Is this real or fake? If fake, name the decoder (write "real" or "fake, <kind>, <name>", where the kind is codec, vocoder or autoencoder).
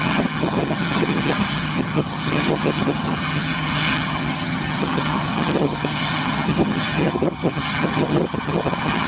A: fake, vocoder, HiFi-GAN